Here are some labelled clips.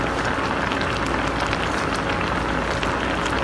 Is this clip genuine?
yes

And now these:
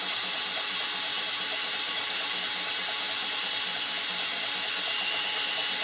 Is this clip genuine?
no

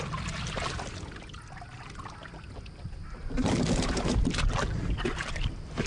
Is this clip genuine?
yes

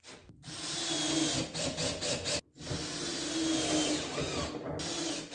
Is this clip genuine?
yes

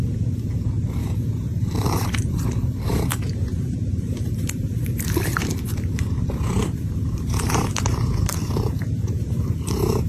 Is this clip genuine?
no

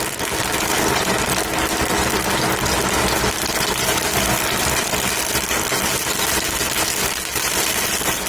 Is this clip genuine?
yes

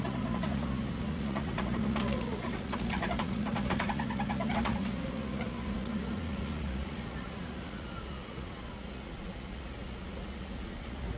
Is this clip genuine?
no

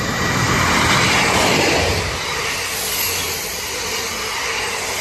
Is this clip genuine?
yes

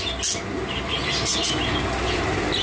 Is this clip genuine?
yes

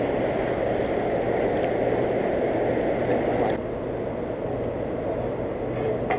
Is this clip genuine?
yes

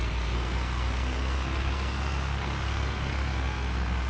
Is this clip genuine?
no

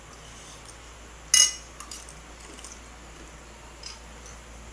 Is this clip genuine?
yes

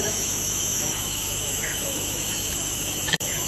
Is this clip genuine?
no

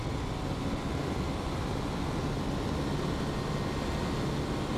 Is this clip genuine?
yes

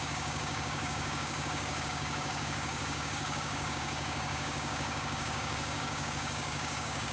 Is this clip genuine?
no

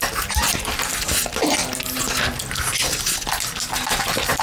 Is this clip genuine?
yes